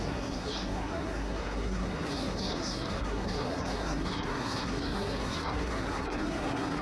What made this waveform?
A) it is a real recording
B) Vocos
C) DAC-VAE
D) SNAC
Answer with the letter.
D